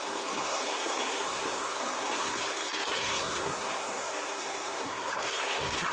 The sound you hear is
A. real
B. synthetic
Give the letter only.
B